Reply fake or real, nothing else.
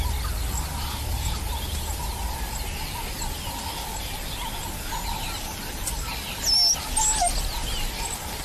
real